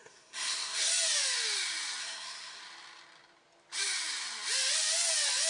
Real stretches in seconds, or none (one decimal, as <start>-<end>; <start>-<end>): 0.9-2.0; 2.6-5.5